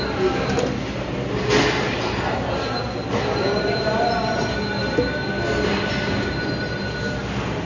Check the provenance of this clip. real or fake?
real